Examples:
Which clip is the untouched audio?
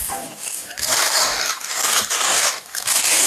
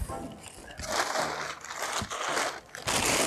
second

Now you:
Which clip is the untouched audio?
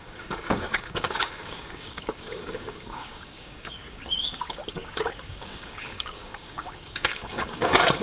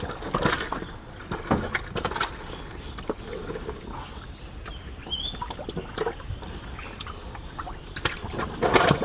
second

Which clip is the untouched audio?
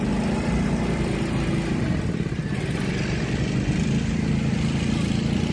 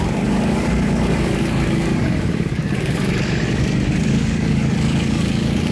first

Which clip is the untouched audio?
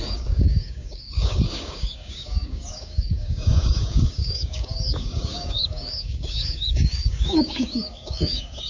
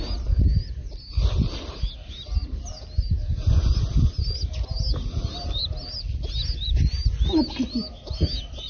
second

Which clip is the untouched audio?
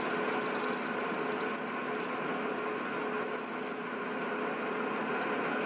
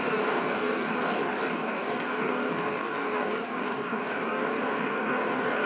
first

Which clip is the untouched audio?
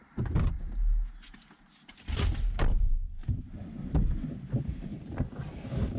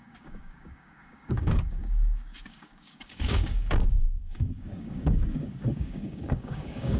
first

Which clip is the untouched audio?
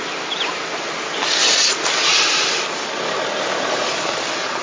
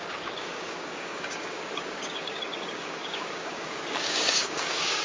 first